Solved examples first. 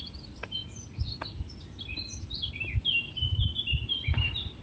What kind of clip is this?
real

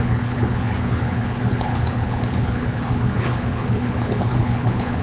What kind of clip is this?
fake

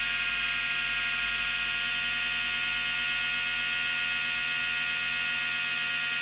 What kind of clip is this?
real